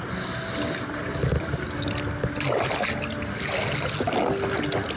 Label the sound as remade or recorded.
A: recorded